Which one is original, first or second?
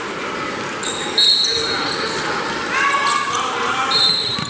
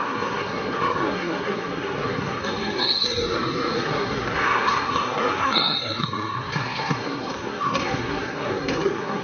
first